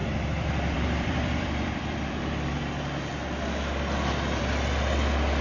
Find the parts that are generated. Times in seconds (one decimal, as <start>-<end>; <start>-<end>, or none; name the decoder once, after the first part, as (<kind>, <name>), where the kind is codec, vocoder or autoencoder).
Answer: 0.0-2.6 (vocoder, BigVGAN v2)